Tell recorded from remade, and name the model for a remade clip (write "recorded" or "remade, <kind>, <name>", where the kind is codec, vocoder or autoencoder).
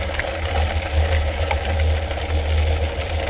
recorded